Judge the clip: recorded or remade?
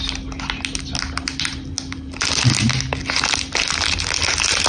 recorded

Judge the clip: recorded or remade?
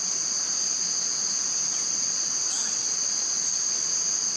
recorded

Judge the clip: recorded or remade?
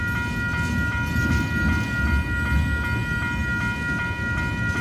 recorded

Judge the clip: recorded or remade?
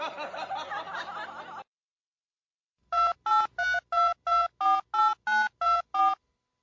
recorded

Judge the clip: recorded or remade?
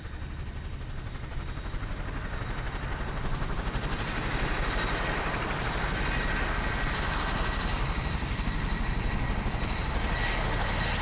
recorded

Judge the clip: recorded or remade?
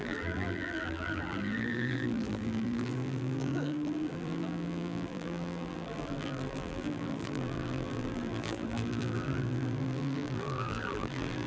remade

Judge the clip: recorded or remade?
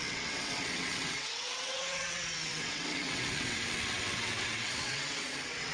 remade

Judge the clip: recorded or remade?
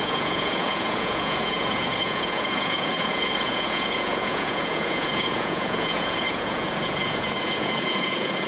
remade